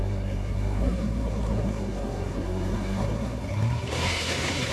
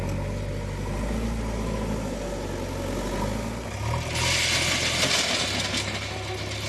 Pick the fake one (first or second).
first